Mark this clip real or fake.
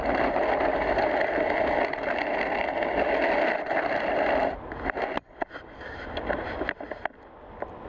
real